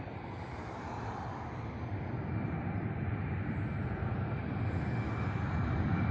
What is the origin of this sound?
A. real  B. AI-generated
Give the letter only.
A